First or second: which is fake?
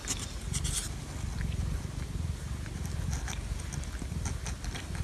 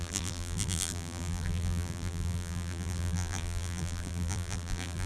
second